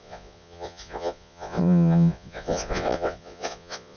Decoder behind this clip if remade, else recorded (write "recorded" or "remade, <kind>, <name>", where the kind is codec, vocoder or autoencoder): remade, vocoder, Vocos